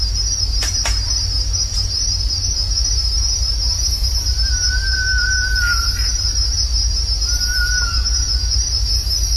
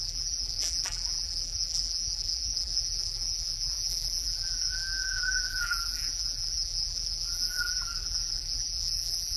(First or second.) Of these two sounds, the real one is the first